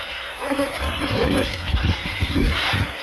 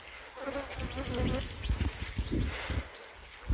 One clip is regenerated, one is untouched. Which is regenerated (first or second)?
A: first